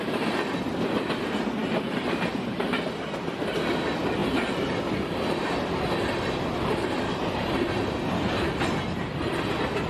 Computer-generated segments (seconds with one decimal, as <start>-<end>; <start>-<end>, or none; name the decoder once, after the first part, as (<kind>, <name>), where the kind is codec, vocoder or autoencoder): none